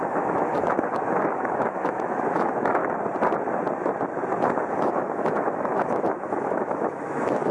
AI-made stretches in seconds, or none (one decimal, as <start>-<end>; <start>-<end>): 0.0-2.8; 4.7-7.5